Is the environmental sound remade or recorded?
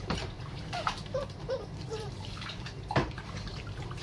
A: remade